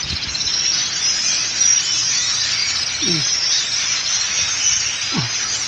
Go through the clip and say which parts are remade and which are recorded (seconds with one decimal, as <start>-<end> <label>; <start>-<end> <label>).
0.0-5.7 recorded